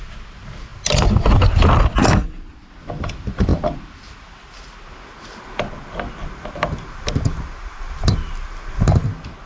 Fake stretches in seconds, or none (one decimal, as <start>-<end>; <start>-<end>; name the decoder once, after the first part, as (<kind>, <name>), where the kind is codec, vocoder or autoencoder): 2.2-2.7 (vocoder, BigVGAN v2)